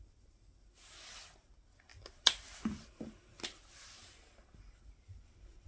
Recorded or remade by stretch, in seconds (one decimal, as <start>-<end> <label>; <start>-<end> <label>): 0.0-5.7 recorded